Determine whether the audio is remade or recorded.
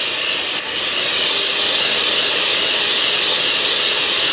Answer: recorded